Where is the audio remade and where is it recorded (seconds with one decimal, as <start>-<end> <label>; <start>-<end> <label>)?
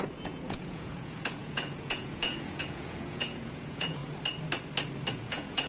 0.0-4.0 remade; 4.0-5.1 recorded; 5.1-5.7 remade